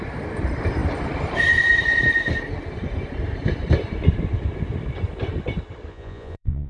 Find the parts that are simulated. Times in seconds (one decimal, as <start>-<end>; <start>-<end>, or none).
5.9-6.7